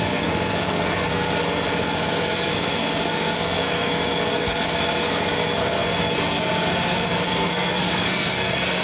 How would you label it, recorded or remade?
remade